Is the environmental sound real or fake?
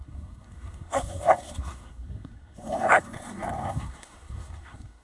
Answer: fake